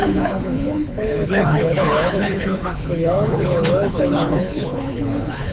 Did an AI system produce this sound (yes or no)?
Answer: yes